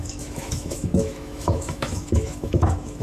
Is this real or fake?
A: fake